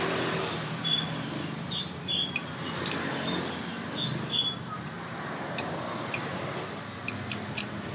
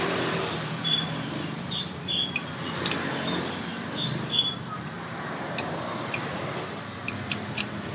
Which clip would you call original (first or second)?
first